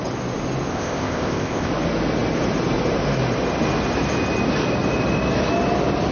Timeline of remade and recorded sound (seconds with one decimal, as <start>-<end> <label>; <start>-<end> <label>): 0.0-0.7 recorded; 0.7-1.7 remade; 1.7-6.1 recorded